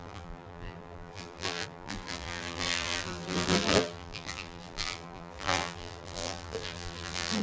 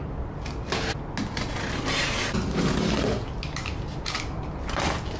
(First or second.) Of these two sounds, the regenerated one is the first